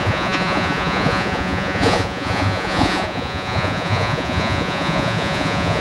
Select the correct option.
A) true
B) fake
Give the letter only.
B